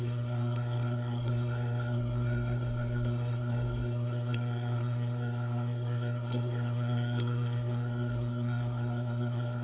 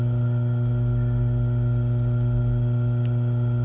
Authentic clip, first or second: second